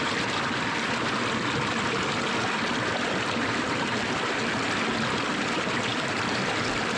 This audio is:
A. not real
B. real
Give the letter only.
B